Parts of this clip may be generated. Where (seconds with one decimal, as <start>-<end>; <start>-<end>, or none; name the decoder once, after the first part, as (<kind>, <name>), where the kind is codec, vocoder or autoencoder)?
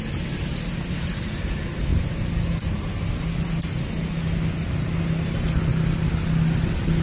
none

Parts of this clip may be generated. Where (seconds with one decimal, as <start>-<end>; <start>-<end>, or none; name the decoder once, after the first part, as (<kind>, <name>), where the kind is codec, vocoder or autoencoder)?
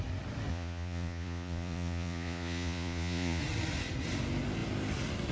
0.5-3.4 (vocoder, Vocos)